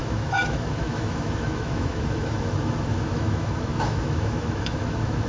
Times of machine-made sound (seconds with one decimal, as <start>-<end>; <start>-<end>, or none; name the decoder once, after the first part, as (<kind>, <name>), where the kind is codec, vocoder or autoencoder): 0.0-5.3 (autoencoder, DAC-VAE)